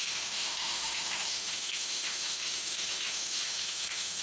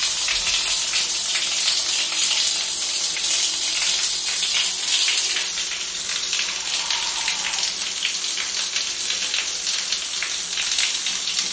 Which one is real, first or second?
second